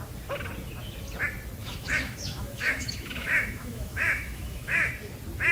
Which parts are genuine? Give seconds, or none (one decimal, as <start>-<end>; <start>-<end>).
0.0-1.6; 4.9-5.5